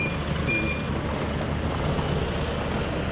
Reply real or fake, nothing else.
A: real